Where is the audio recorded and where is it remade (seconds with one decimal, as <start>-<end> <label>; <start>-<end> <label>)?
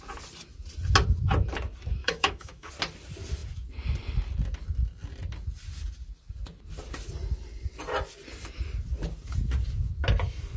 0.0-2.0 recorded; 2.0-2.7 remade; 2.7-10.6 recorded